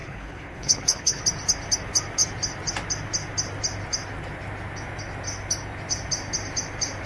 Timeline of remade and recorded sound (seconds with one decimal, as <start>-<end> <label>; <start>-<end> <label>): 0.0-1.2 remade; 1.2-7.1 recorded